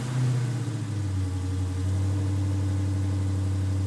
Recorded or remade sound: recorded